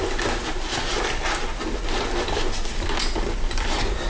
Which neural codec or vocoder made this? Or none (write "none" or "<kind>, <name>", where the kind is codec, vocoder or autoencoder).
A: none